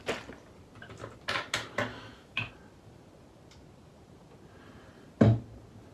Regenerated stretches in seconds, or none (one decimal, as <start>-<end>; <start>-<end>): 1.9-2.5